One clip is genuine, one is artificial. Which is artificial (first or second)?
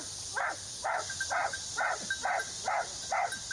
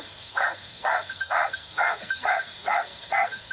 second